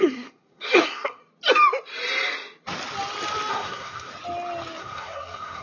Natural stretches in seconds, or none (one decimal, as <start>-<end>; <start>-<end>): 1.2-3.5; 4.1-4.8